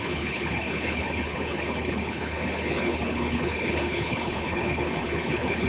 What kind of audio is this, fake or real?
fake